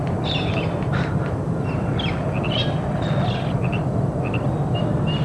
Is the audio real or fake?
real